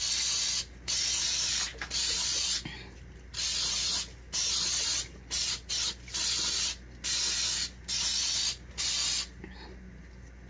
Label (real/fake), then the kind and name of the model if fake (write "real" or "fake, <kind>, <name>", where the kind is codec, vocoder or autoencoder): real